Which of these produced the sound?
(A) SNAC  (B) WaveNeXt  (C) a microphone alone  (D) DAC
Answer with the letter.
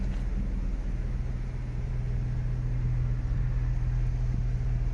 C